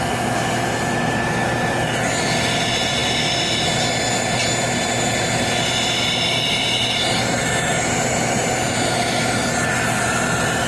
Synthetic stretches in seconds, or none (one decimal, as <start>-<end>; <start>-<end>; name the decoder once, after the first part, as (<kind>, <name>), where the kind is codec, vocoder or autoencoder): none